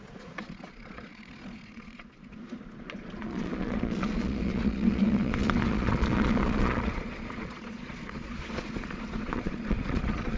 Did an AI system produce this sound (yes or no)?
yes